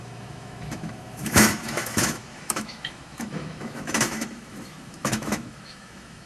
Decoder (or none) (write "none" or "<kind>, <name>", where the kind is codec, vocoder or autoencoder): autoencoder, DAC-VAE